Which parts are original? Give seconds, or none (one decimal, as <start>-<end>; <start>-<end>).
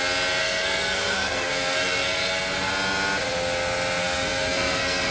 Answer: 0.0-0.4; 2.7-4.0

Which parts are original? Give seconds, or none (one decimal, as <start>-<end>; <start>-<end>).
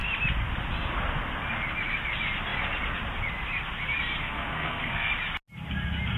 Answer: 0.0-4.2; 5.1-6.2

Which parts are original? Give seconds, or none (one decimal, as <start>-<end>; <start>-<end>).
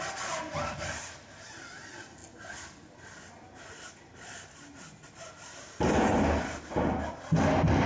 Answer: 0.0-7.9